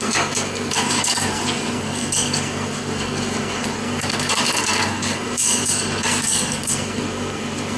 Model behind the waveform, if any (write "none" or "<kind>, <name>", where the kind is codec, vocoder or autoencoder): codec, SNAC